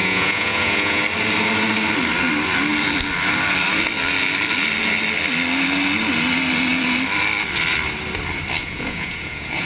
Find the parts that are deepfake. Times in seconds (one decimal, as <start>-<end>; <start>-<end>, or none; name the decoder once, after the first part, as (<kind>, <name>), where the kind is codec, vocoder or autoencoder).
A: 0.0-1.0 (vocoder, Vocos); 8.6-9.7